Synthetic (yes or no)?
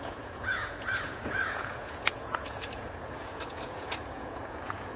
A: yes